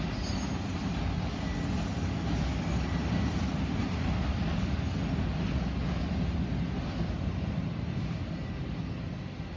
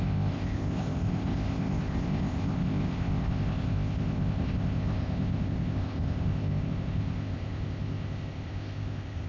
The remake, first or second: second